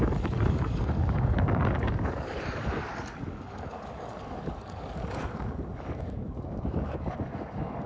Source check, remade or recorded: remade